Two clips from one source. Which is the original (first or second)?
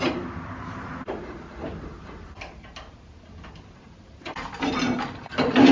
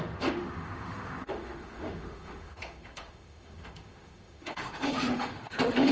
first